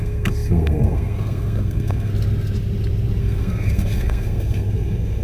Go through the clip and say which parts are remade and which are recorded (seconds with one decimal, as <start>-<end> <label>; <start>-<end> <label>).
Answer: 0.0-2.1 remade; 2.1-3.2 recorded; 3.2-5.2 remade